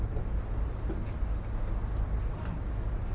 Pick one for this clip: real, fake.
real